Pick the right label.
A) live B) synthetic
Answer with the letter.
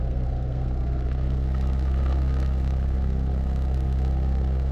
B